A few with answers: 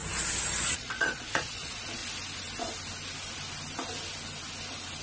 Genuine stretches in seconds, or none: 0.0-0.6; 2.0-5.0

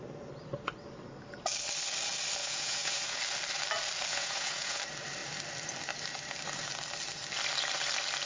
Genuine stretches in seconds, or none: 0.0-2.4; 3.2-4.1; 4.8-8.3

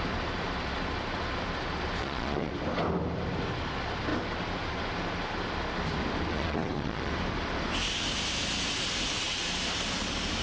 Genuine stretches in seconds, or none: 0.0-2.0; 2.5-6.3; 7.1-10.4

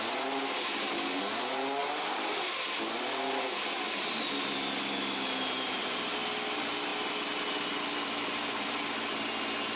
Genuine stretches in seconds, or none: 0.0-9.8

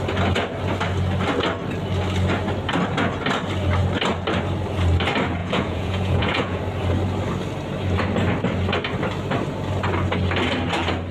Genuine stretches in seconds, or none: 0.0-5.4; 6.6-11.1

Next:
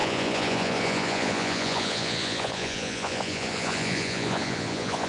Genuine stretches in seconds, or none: none